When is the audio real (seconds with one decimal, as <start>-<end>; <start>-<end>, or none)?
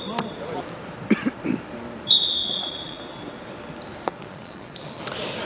0.0-2.4; 3.0-4.1; 5.0-5.4